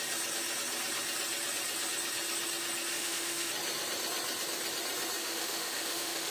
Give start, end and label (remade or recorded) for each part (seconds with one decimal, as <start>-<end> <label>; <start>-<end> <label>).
0.0-2.9 recorded; 2.9-3.5 remade; 3.5-5.2 recorded; 5.2-6.3 remade